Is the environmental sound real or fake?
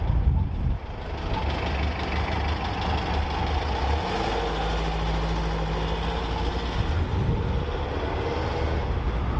real